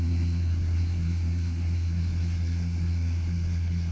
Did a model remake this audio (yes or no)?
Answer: yes